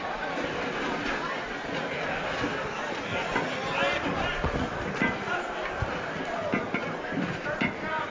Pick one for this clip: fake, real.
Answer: real